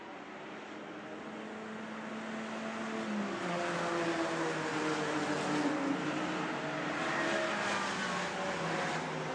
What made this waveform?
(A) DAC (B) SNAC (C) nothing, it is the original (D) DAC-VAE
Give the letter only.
C